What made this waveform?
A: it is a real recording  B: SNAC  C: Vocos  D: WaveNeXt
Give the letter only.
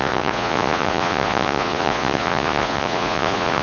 C